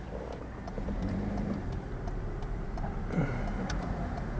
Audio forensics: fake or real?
fake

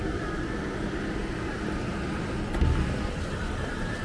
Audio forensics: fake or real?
real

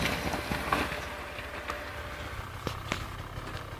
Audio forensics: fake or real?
real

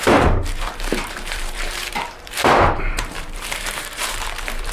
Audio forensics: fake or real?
fake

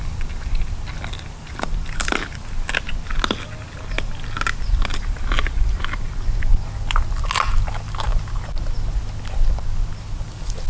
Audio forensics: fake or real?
real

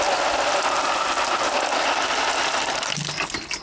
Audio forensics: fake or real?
real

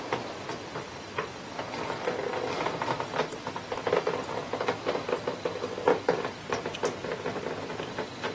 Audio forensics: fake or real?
real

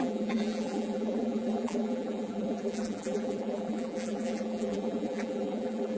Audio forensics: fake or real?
fake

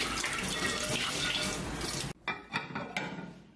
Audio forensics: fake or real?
real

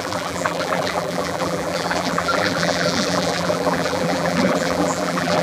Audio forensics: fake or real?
fake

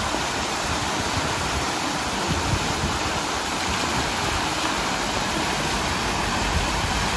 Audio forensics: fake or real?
fake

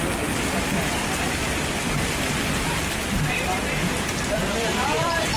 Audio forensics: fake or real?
fake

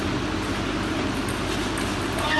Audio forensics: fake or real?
real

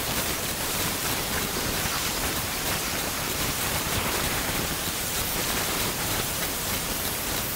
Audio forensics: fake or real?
fake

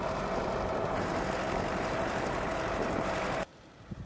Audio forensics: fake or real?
fake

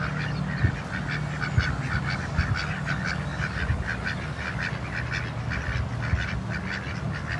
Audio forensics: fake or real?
real